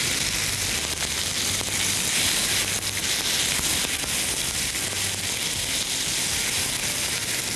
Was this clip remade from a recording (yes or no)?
no